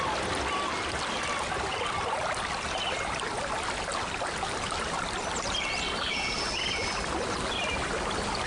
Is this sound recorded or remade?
recorded